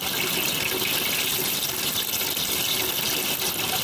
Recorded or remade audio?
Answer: recorded